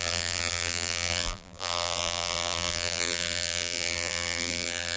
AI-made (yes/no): yes